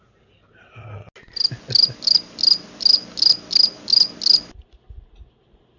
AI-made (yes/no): no